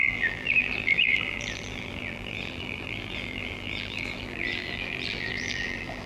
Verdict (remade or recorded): remade